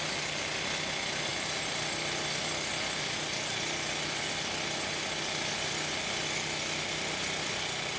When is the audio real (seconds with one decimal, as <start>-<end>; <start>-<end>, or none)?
0.0-8.0